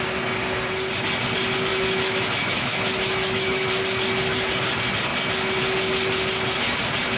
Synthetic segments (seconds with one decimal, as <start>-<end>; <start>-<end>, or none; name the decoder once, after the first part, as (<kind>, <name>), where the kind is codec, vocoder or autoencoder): 1.7-3.7 (autoencoder, DAC-VAE)